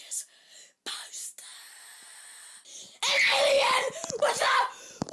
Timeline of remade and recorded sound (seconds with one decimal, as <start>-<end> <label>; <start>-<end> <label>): 0.0-5.1 recorded